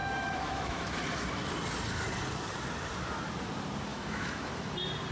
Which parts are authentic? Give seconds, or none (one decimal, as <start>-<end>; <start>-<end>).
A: 0.9-3.9; 4.5-5.1